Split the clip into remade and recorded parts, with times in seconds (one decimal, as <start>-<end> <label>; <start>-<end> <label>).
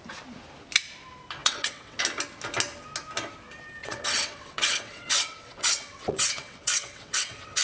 0.0-1.4 recorded; 1.4-2.0 remade; 2.0-3.8 recorded; 3.8-7.6 remade